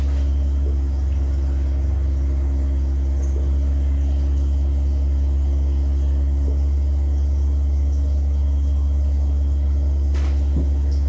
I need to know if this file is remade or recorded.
recorded